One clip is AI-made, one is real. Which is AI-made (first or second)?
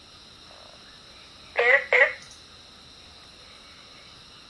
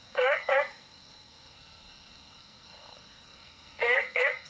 second